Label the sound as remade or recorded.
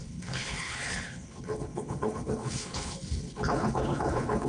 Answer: remade